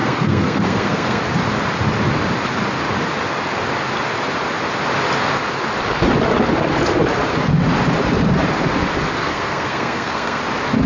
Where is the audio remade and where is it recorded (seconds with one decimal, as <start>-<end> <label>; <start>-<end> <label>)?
0.0-1.2 remade; 1.2-9.2 recorded; 9.2-10.4 remade; 10.4-10.9 recorded